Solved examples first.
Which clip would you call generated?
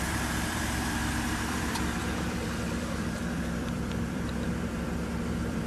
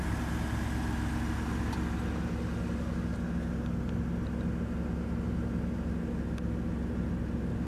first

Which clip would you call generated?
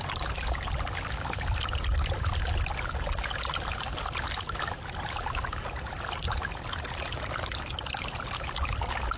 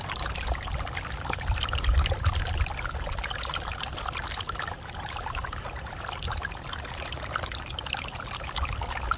second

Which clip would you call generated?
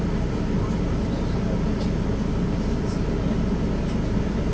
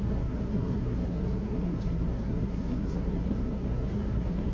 second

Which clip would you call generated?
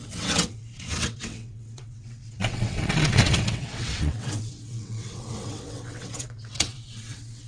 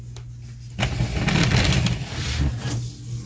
first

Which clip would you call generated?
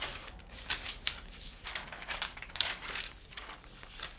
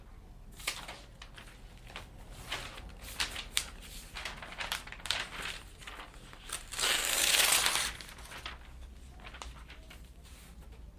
first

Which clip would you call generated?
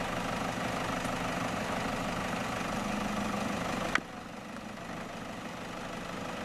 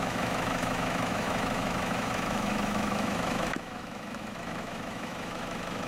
second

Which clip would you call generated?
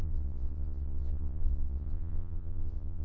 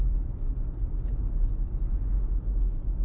first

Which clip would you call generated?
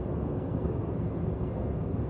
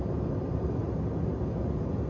first